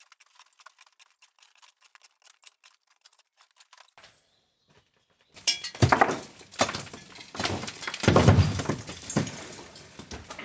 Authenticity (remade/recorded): recorded